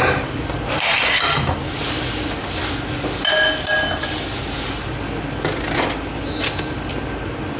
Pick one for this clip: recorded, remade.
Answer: recorded